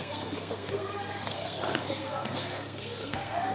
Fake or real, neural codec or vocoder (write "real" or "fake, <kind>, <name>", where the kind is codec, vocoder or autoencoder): fake, codec, SNAC